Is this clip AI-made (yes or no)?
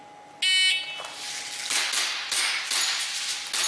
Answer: no